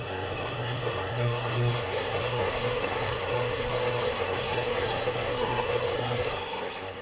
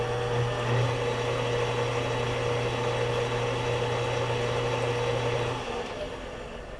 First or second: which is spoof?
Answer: first